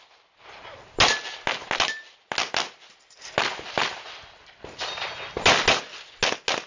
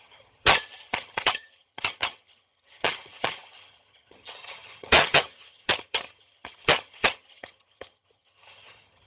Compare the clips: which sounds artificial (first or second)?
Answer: second